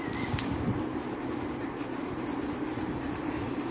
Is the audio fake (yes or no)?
no